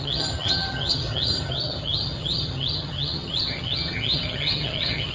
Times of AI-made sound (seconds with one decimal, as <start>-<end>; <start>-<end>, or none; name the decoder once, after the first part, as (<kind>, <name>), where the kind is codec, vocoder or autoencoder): 0.0-5.1 (vocoder, HiFi-GAN)